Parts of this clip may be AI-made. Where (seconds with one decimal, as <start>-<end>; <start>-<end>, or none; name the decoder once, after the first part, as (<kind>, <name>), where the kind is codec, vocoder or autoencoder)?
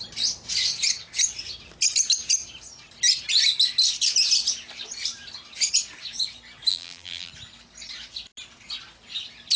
6.7-7.3 (vocoder, BigVGAN v2)